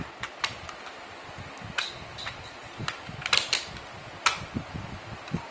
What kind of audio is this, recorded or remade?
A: recorded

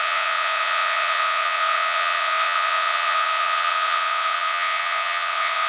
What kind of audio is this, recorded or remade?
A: remade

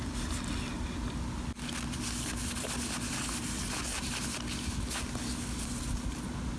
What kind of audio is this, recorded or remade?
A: recorded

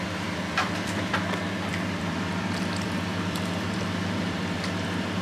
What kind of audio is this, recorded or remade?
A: remade